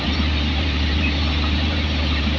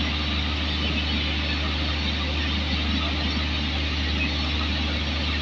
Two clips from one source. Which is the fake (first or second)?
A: first